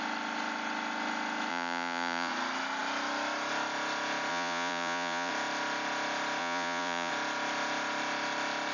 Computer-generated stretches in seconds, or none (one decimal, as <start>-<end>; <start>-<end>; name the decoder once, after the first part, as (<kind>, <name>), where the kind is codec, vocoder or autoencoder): 1.5-2.3 (vocoder, Vocos); 4.3-5.3; 6.4-7.1